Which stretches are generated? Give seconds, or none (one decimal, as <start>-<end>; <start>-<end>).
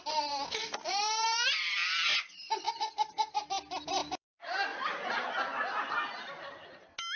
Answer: none